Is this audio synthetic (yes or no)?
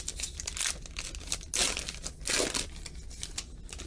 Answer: no